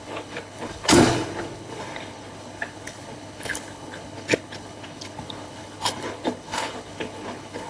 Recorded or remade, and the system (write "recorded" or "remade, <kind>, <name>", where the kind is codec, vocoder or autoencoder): remade, codec, HILCodec